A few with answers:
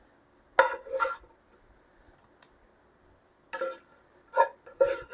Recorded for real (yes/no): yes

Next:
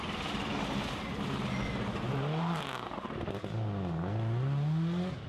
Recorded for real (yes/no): yes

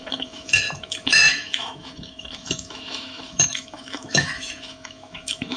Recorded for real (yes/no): no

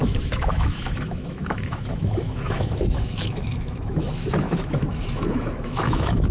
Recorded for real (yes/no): no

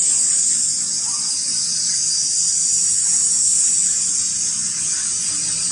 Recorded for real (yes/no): yes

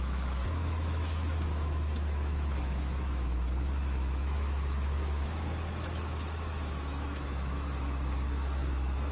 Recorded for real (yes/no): no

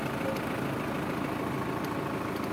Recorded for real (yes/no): yes